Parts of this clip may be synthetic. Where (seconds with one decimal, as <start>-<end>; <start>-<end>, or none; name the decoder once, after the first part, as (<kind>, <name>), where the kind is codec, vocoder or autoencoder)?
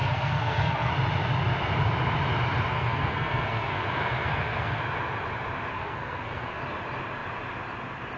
0.0-0.9 (codec, SNAC); 2.7-4.8; 5.7-6.6